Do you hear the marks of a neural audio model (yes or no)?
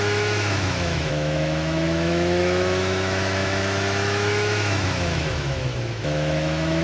yes